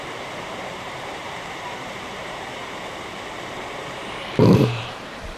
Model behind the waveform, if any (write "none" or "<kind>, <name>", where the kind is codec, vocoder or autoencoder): vocoder, BigVGAN v2